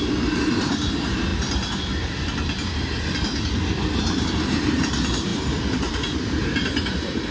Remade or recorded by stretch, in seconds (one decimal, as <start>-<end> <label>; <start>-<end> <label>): 0.0-1.3 remade; 1.3-4.0 recorded; 4.0-7.3 remade